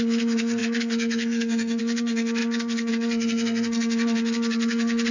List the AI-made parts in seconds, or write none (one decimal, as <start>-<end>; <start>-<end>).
0.0-5.1

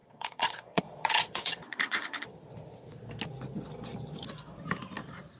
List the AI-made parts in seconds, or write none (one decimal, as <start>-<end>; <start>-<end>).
0.0-2.3

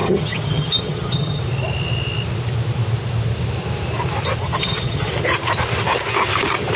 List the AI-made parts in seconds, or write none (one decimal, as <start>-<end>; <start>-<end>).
0.0-1.4; 4.4-5.1

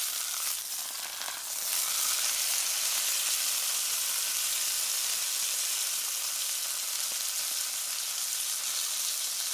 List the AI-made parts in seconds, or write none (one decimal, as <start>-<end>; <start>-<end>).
none

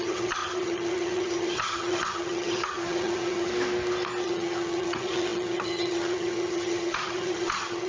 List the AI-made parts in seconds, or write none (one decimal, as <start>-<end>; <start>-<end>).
0.0-3.5; 4.2-7.9

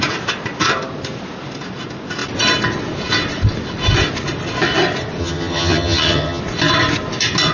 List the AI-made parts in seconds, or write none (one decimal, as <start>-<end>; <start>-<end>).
5.2-6.4

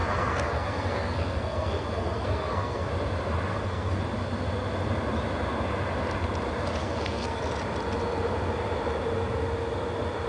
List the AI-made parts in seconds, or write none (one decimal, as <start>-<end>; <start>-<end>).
0.0-2.9; 3.5-4.0; 6.8-7.4

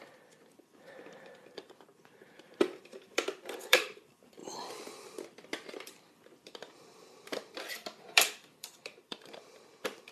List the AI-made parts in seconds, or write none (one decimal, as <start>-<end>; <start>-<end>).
0.0-4.4; 5.7-10.1